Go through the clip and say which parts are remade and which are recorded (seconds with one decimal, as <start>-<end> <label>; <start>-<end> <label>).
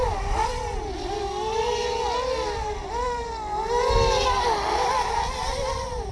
0.0-6.1 recorded